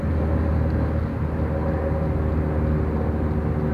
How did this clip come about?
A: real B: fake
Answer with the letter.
A